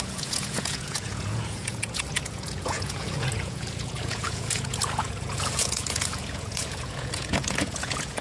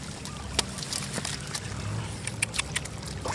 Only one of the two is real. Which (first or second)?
second